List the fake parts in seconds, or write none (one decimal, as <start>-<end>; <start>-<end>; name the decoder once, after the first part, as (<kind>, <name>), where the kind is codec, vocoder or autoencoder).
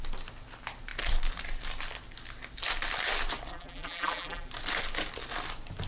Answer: 3.5-4.5 (vocoder, BigVGAN v2)